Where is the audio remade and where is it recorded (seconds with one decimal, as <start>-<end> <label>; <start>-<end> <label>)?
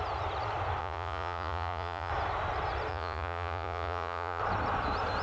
0.0-0.8 recorded; 0.8-2.1 remade; 2.1-2.9 recorded; 2.9-4.4 remade; 4.4-5.2 recorded